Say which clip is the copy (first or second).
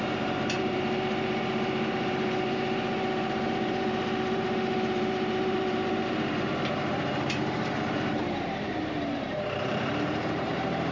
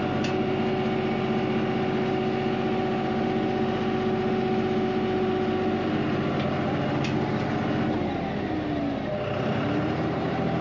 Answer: first